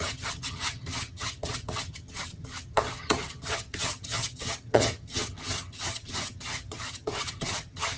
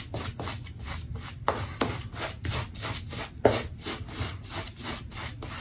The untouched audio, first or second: second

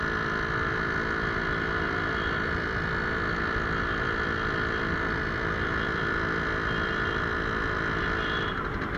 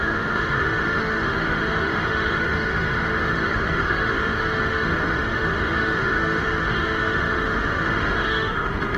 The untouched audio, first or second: first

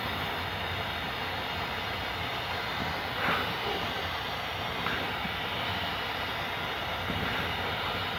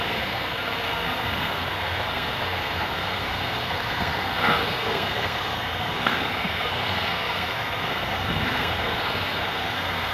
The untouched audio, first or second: first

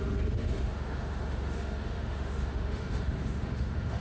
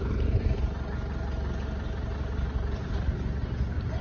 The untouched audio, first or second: second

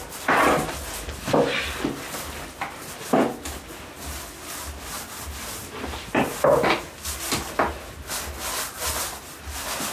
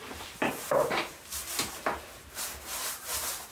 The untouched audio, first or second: first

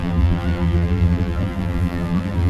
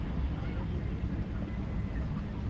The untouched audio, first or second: second